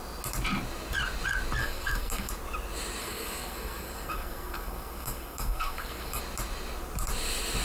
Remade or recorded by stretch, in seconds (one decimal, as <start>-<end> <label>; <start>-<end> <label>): 0.0-1.6 recorded; 1.6-2.3 remade; 2.3-3.0 recorded; 3.0-6.2 remade; 6.2-7.6 recorded